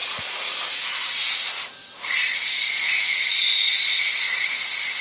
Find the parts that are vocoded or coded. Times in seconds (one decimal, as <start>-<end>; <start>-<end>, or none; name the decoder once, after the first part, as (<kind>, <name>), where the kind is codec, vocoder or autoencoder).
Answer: 0.0-0.8 (vocoder, Vocos); 1.8-4.5